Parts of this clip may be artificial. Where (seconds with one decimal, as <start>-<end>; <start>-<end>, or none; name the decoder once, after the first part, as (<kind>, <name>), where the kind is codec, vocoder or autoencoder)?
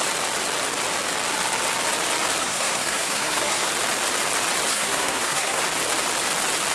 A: 2.4-3.7 (codec, SNAC); 4.7-5.6